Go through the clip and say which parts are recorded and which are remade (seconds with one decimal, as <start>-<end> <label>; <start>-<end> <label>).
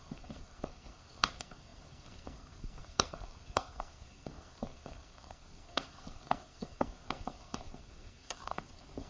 0.0-9.1 remade